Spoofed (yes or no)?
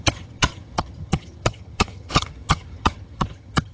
yes